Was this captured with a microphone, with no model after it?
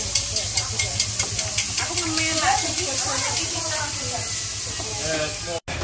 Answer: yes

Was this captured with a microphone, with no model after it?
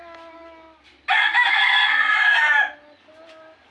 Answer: yes